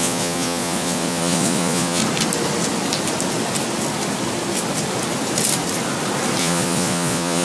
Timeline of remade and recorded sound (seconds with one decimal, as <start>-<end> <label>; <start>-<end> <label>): 0.0-2.0 remade; 2.0-6.4 recorded; 6.4-7.4 remade